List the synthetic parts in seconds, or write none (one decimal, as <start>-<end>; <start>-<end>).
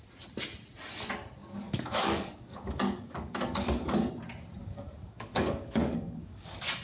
1.4-4.1; 4.6-6.8